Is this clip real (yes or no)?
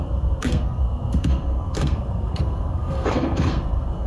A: no